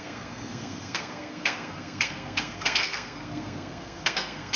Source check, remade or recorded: remade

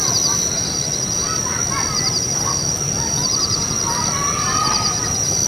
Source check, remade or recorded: recorded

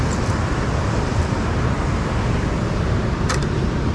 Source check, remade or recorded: remade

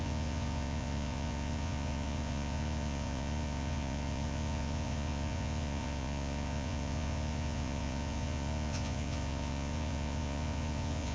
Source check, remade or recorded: remade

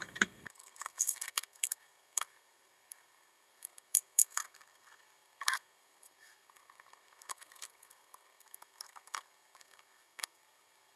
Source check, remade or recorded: remade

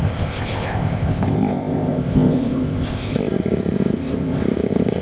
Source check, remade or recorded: remade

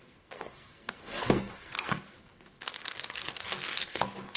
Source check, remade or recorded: remade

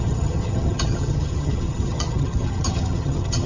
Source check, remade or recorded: remade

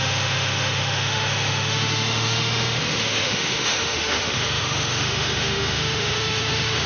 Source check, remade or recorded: remade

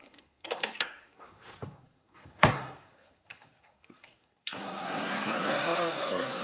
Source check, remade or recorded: remade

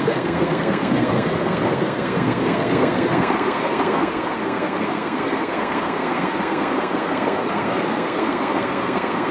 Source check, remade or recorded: remade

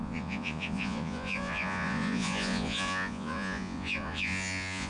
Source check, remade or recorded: remade